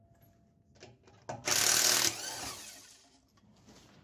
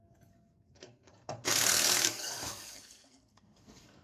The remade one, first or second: second